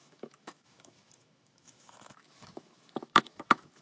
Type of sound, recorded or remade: remade